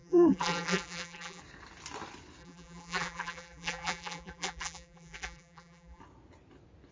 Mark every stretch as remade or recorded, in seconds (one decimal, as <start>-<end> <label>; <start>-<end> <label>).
0.0-1.4 remade; 1.4-2.4 recorded; 2.4-6.0 remade; 6.0-6.9 recorded